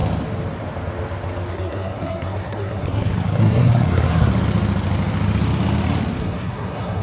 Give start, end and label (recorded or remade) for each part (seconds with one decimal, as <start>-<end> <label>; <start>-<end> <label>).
0.0-1.5 recorded; 1.5-4.3 remade; 4.3-6.2 recorded; 6.2-7.0 remade